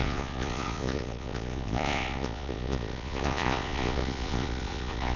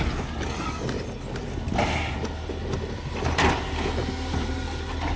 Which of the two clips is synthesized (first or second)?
first